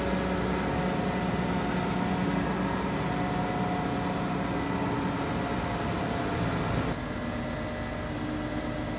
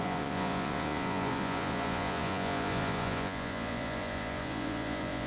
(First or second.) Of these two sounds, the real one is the first